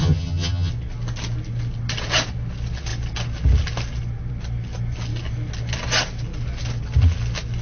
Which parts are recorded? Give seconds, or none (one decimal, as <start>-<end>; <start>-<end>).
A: 0.7-7.6